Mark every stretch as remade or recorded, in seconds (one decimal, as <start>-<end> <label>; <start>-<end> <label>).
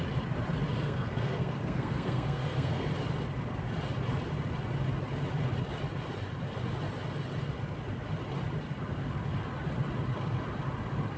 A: 0.0-0.7 recorded; 0.7-2.9 remade; 2.9-11.2 recorded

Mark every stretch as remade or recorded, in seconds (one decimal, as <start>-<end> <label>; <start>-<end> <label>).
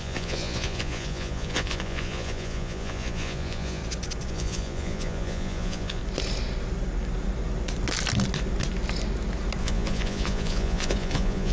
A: 0.0-3.8 remade; 3.8-4.3 recorded; 4.3-6.0 remade; 6.0-9.6 recorded; 9.6-11.5 remade